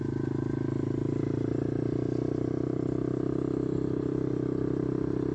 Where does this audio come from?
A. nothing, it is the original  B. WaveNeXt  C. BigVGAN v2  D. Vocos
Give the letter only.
A